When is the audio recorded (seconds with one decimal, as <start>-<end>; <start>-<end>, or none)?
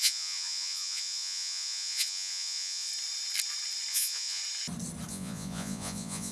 2.9-3.9; 4.4-5.1